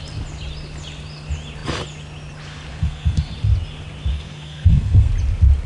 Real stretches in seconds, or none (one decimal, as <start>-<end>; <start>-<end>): 0.0-2.7; 3.3-4.1; 5.1-5.7